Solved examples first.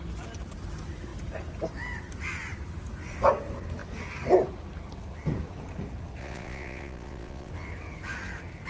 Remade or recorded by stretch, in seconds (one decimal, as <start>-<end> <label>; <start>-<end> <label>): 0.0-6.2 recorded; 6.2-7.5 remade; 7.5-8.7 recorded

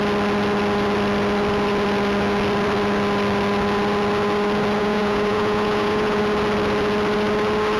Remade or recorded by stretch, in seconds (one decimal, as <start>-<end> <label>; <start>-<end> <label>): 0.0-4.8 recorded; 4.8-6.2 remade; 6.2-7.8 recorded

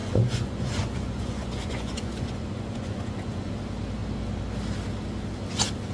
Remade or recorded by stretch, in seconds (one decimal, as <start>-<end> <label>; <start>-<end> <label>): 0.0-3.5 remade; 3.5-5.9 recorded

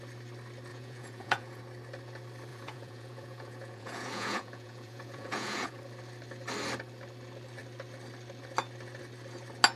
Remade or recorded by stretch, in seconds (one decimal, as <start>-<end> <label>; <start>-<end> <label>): 0.0-0.7 recorded; 0.7-1.6 remade; 1.6-2.5 recorded; 2.5-5.8 remade; 5.8-9.8 recorded